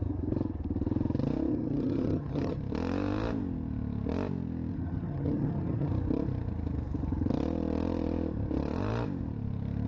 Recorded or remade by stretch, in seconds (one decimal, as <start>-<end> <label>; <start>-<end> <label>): 0.0-1.5 recorded; 1.5-2.6 remade; 2.6-4.7 recorded; 4.7-5.9 remade; 5.9-9.9 recorded